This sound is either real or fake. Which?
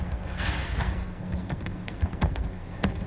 fake